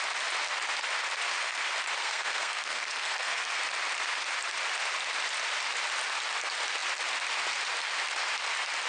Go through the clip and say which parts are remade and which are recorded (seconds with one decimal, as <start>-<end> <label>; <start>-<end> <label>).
0.0-2.0 recorded; 2.0-3.6 remade; 3.6-8.9 recorded